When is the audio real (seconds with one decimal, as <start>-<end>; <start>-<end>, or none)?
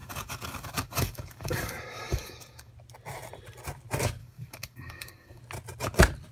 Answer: 2.7-4.2; 5.4-6.3